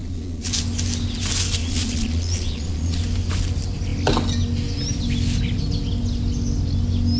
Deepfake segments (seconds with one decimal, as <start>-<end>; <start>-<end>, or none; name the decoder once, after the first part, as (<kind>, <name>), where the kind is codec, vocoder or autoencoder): 0.0-0.5 (vocoder, Vocos); 1.6-3.0